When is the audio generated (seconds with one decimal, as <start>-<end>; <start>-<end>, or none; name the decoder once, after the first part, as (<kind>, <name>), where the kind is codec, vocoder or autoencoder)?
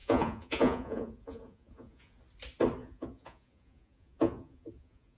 0.0-2.2 (vocoder, Vocos); 2.8-5.2